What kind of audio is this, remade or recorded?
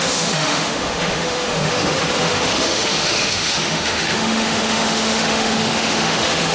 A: remade